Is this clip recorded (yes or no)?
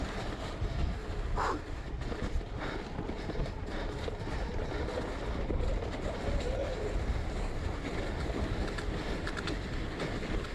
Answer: yes